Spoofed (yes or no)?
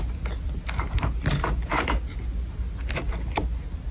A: no